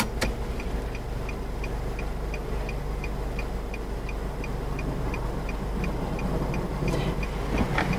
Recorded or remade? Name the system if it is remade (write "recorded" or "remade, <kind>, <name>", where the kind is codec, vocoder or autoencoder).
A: recorded